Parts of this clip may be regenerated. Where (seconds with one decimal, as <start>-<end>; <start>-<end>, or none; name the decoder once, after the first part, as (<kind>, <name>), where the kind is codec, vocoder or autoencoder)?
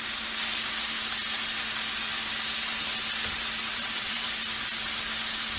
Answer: 3.7-4.3 (vocoder, WaveNeXt)